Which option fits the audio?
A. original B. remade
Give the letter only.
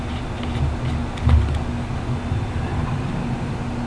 A